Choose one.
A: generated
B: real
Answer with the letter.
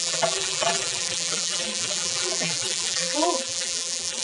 A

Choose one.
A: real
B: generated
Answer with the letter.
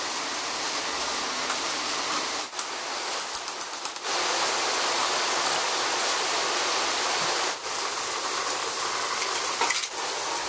A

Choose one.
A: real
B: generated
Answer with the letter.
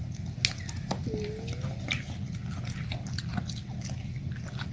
A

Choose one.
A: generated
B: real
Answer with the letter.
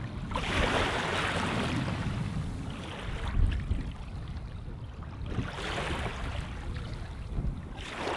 B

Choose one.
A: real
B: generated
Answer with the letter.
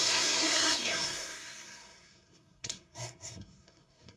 B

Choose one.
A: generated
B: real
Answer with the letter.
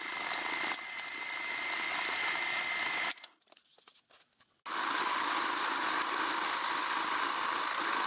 B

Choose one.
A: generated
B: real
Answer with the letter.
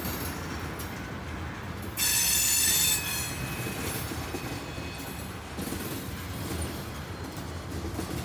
B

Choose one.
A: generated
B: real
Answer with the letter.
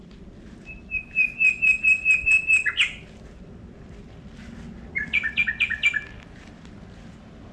B